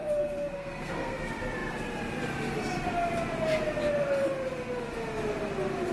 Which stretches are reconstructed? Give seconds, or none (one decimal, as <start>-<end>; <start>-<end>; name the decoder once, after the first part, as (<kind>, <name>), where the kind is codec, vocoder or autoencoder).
0.0-1.2 (codec, SNAC)